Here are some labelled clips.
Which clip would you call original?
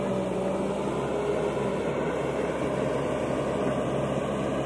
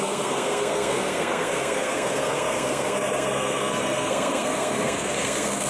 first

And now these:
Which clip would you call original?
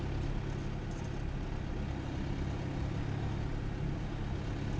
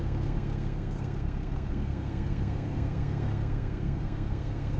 first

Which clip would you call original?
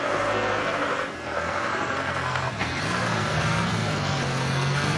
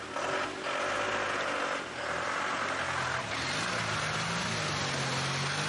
second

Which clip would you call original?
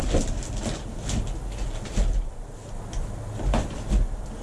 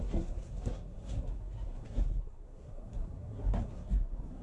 first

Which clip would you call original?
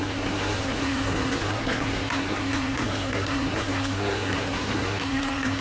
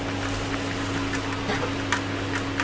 second